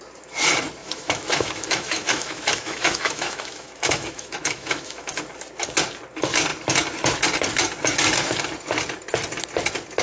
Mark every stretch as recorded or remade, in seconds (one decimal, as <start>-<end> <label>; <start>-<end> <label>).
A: 0.0-0.8 recorded; 0.8-5.2 remade; 5.2-10.0 recorded